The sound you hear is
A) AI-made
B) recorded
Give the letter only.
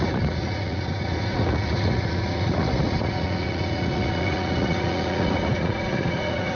A